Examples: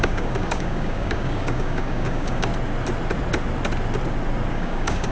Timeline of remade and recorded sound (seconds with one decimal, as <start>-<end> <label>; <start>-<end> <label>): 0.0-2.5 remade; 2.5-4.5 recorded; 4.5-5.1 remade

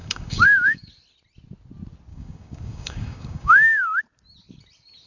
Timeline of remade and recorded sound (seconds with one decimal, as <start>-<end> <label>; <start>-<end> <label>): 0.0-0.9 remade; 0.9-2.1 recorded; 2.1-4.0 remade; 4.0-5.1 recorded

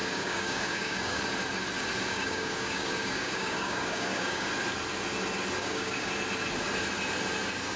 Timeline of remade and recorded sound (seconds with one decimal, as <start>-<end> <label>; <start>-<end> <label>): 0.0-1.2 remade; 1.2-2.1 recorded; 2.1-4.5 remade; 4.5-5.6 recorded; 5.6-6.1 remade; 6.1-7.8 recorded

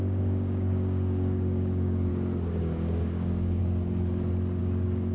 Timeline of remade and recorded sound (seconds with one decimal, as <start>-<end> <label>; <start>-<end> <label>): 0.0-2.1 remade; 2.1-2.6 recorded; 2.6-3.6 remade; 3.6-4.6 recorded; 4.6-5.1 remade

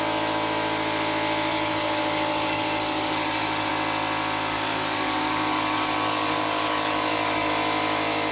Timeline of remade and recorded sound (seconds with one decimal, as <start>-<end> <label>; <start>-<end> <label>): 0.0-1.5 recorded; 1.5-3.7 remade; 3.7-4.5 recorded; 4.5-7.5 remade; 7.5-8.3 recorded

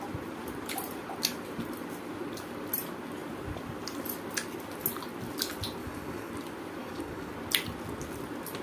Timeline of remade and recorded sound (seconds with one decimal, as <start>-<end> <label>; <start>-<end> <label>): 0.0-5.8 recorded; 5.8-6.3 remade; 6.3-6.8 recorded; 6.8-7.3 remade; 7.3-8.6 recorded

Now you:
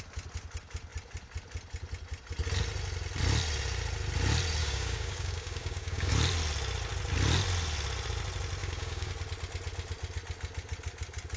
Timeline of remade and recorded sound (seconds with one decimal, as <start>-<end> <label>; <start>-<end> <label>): 0.0-4.6 recorded; 4.6-6.1 remade; 6.1-8.6 recorded; 8.6-9.1 remade; 9.1-11.4 recorded